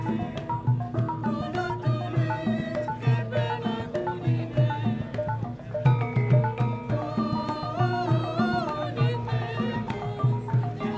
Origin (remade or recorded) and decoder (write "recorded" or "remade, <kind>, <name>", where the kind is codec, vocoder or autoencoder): recorded